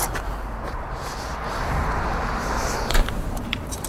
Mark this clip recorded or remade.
remade